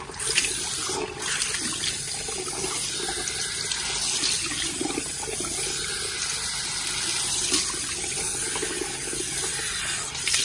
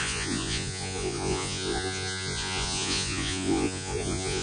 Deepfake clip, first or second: second